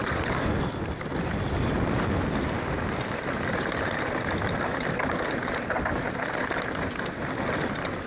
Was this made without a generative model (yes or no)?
yes